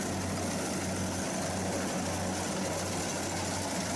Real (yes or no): yes